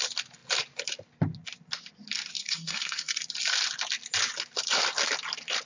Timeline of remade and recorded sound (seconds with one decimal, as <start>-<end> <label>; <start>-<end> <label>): 0.0-2.4 recorded; 2.4-3.2 remade; 3.2-5.7 recorded